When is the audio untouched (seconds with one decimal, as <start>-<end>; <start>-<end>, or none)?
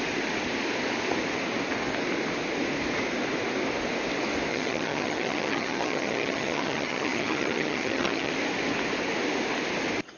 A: 0.0-4.5; 8.3-10.2